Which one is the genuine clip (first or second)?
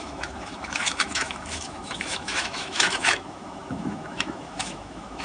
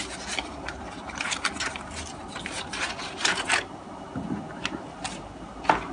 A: second